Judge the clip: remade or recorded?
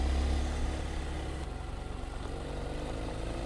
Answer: recorded